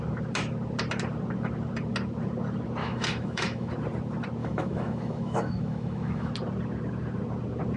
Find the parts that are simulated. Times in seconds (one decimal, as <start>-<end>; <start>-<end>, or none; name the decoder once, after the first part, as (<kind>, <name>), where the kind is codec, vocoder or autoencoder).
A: 2.8-3.7 (autoencoder, DAC-VAE); 4.4-6.3